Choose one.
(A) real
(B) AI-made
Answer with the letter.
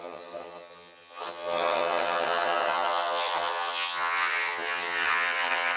B